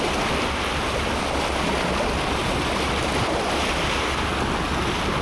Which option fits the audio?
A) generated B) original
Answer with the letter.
B